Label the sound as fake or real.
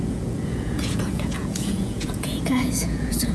fake